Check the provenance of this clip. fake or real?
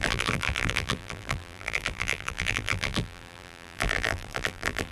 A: fake